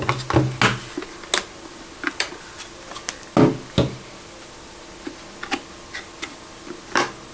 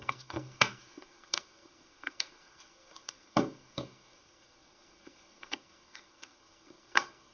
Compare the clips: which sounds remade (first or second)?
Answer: second